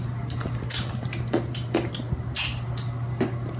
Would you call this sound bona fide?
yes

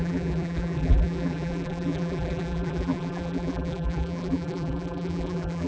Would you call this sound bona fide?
no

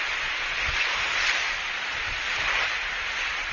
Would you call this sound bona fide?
yes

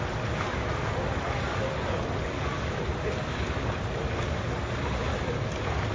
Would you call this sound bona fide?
yes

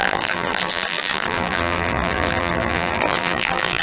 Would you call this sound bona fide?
no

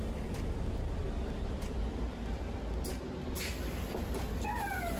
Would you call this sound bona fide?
no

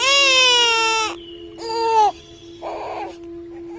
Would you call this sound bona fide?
yes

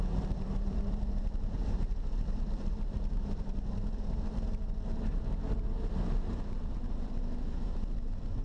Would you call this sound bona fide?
no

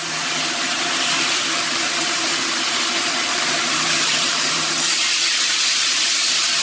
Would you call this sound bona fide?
no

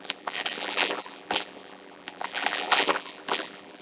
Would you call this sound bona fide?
no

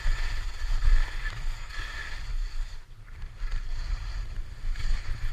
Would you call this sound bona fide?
yes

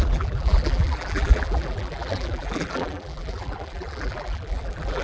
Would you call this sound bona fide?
no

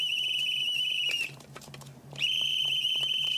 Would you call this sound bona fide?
no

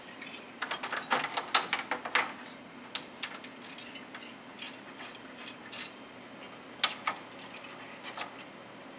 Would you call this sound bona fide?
yes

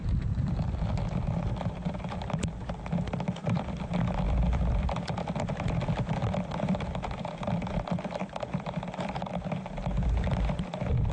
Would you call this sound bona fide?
no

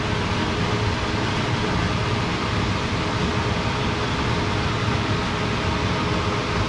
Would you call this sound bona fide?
yes